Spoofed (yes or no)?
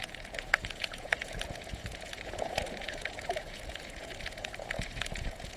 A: yes